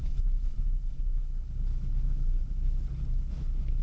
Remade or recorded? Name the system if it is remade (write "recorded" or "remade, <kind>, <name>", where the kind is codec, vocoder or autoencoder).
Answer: remade, codec, HILCodec